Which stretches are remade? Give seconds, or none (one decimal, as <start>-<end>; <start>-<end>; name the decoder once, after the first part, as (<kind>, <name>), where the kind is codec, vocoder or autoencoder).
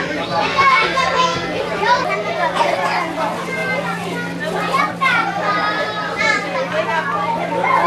0.5-1.6 (codec, SNAC)